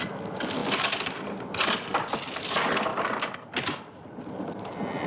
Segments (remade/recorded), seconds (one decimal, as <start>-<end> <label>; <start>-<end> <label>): 0.0-5.1 recorded